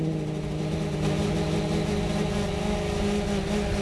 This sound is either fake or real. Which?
real